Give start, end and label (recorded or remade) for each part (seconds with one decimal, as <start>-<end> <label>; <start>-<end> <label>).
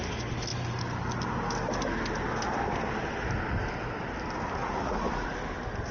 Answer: 0.0-4.6 recorded; 4.6-5.3 remade; 5.3-5.9 recorded